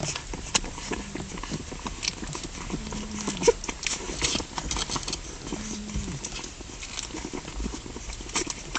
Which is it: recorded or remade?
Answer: recorded